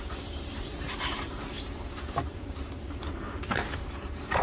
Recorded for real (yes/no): no